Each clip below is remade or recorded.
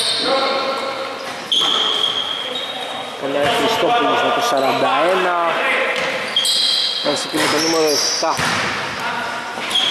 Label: recorded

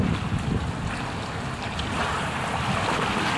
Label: recorded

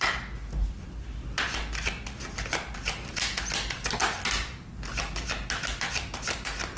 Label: recorded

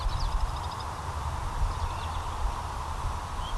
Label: remade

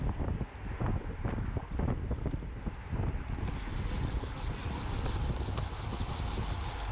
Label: recorded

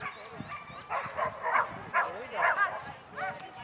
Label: recorded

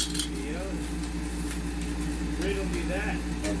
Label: recorded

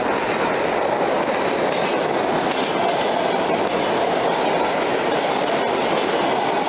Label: recorded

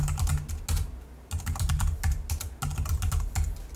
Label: recorded